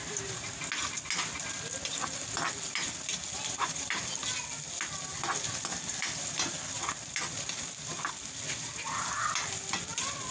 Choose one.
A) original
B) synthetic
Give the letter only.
A